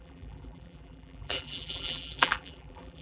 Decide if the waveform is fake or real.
fake